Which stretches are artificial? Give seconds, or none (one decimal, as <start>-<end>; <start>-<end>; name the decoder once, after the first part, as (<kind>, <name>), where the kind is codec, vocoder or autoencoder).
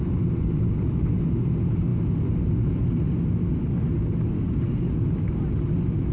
none